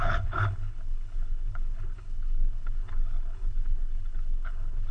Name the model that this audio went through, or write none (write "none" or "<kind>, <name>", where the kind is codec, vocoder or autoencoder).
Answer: codec, HILCodec